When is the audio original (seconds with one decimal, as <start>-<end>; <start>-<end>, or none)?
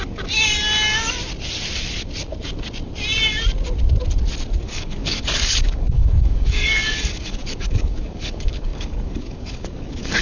0.0-4.6